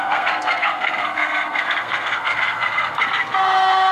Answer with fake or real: fake